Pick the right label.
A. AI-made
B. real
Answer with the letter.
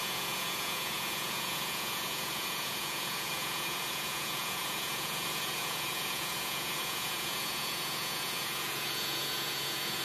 A